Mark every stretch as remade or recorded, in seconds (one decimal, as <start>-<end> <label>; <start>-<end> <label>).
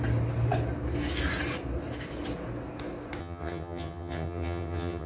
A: 0.0-3.2 recorded; 3.2-5.1 remade